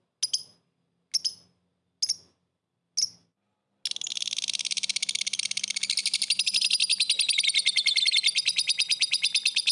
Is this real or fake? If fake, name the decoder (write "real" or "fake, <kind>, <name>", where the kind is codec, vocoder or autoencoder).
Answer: real